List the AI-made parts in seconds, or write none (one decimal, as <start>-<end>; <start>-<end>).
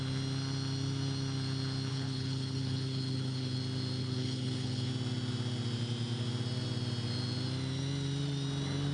1.9-3.6; 4.0-4.9